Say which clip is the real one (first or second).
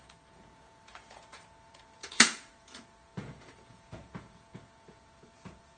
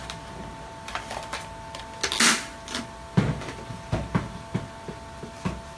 second